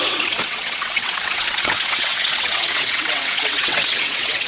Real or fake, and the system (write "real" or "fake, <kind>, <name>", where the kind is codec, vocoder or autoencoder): fake, vocoder, WaveNeXt